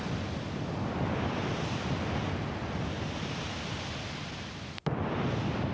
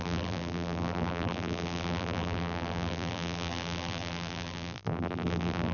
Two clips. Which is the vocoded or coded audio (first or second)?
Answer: second